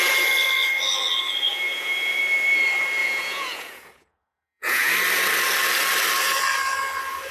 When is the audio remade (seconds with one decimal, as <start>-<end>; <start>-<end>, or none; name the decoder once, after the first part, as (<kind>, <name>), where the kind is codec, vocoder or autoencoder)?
1.5-2.2 (vocoder, Vocos); 3.0-4.9